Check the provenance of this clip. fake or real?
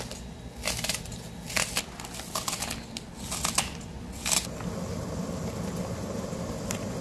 real